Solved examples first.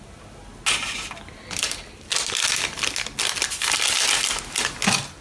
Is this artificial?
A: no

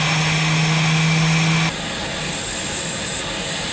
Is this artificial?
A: no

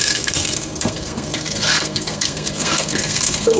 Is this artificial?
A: yes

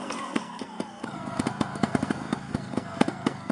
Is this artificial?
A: yes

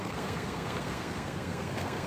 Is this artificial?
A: yes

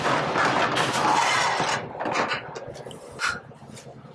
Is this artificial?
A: no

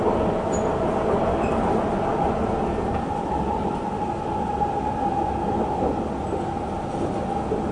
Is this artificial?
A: no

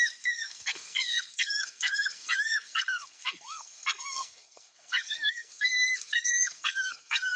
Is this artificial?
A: yes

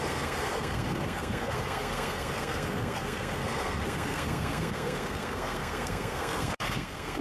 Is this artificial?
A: yes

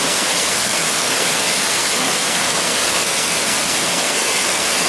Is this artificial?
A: yes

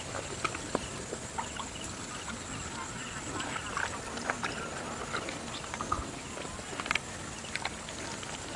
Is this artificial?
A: no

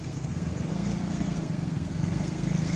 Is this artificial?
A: yes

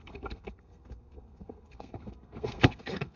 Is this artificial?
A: yes